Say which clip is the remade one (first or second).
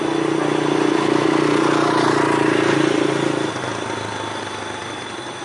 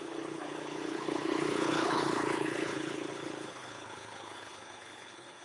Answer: second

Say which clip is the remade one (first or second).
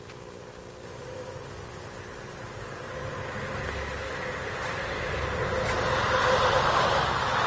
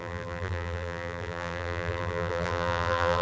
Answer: second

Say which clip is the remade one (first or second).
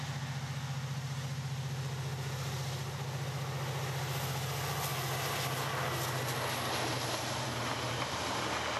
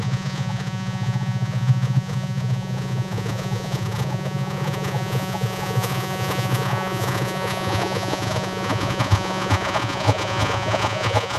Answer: second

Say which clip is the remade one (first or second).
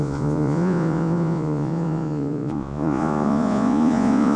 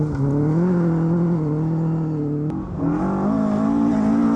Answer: first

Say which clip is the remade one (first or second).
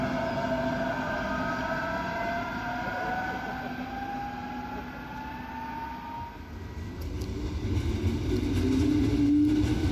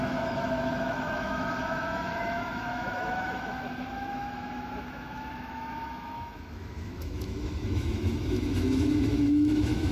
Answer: second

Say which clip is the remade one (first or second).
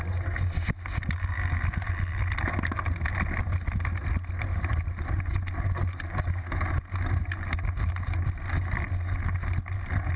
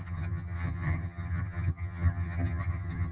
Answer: second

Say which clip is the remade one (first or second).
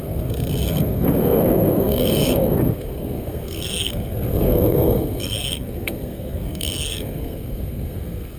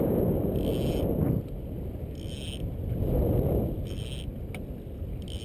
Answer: first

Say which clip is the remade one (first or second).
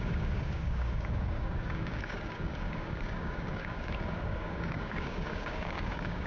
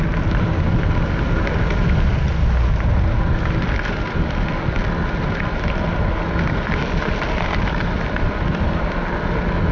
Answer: first